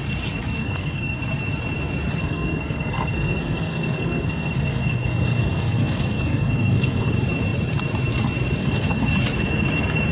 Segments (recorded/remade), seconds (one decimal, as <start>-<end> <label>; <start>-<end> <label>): 0.0-0.6 recorded; 0.6-1.2 remade; 1.2-2.2 recorded; 2.2-7.1 remade; 7.1-8.6 recorded; 8.6-9.1 remade; 9.1-10.1 recorded

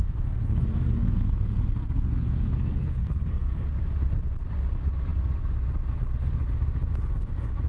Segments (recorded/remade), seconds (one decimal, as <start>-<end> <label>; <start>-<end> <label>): 0.0-3.7 remade; 3.7-7.7 recorded

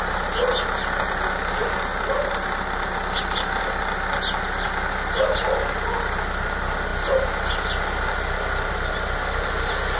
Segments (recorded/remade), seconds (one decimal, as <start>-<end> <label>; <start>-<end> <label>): 0.0-10.0 recorded

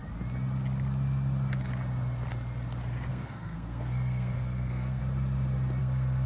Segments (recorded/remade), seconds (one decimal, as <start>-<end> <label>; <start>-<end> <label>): 0.0-3.1 recorded; 3.1-5.0 remade; 5.0-5.8 recorded; 5.8-6.3 remade

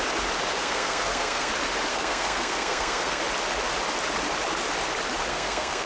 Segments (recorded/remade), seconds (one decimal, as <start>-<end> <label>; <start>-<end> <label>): 0.0-0.6 recorded; 0.6-1.5 remade; 1.5-1.9 recorded; 1.9-3.2 remade; 3.2-5.3 recorded; 5.3-5.9 remade

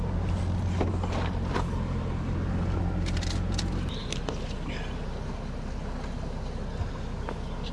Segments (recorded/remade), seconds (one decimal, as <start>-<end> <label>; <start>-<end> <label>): 0.0-7.7 recorded

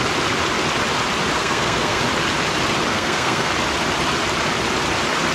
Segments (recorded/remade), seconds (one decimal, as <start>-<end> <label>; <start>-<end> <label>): 0.0-1.4 recorded; 1.4-2.0 remade; 2.0-2.9 recorded; 2.9-3.5 remade; 3.5-5.3 recorded

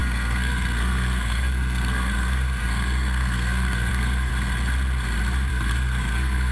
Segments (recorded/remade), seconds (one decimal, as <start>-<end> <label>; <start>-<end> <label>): 0.0-4.3 remade; 4.3-5.5 recorded; 5.5-6.5 remade